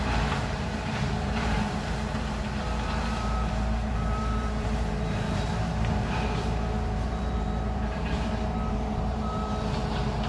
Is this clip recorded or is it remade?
remade